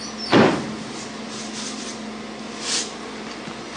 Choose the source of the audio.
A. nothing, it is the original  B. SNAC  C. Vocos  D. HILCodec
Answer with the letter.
A